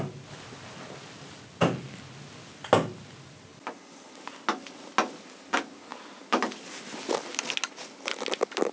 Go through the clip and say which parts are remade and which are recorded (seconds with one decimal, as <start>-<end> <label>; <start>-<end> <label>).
0.0-8.7 recorded